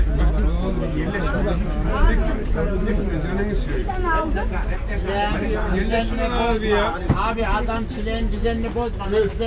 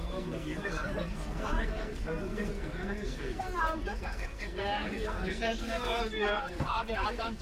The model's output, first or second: second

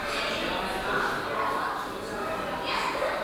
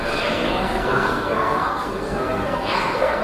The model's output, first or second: second